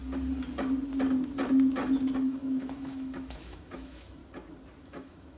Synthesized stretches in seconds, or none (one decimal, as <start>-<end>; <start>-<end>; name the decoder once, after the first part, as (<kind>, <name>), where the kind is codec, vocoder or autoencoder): 2.2-4.2 (autoencoder, DAC-VAE); 4.8-5.4